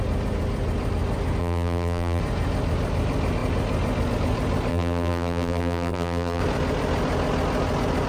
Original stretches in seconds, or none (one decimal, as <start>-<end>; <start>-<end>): 0.0-1.4; 2.2-4.7; 6.4-8.1